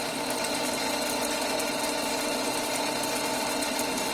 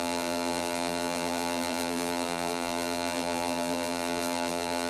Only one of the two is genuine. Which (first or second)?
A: first